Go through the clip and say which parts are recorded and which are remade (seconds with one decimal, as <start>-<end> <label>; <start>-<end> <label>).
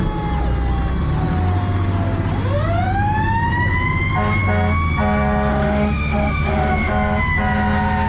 0.0-5.5 recorded; 5.5-6.9 remade; 6.9-8.1 recorded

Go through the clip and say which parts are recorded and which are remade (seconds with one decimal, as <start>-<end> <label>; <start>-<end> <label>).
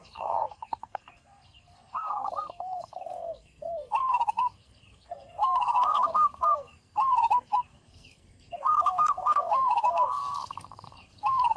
0.0-11.6 remade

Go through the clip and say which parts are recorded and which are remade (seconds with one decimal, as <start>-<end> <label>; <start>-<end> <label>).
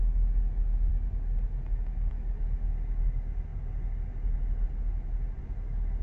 0.0-6.0 recorded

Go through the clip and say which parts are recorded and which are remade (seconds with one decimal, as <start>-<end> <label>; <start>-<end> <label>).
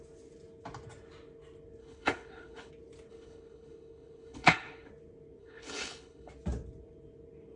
0.0-1.8 recorded; 1.8-2.7 remade; 2.7-3.1 recorded; 3.1-4.9 remade; 4.9-5.4 recorded; 5.4-6.3 remade; 6.3-7.6 recorded